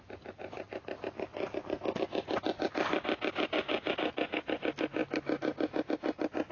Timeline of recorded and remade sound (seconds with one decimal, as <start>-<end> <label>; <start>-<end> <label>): 0.0-6.5 recorded